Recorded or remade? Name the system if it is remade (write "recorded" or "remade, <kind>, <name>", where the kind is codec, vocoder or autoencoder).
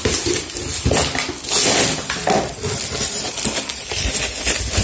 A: recorded